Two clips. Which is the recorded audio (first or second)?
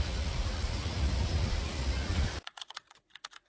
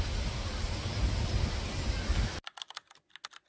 second